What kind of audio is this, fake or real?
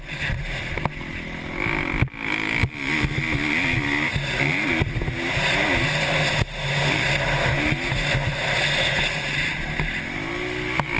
real